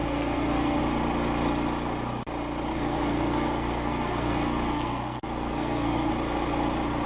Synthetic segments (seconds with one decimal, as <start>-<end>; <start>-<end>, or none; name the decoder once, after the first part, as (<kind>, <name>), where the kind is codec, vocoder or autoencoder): 0.0-0.8 (codec, SNAC); 2.7-6.1